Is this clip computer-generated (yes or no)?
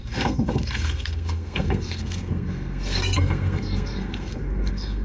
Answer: yes